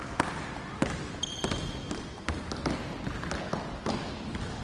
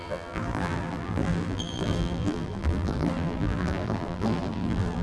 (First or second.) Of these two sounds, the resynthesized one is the second